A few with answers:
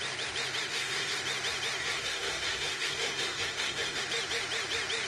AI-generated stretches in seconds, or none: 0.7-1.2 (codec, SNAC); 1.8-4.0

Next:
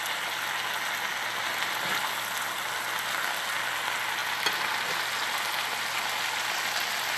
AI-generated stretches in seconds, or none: none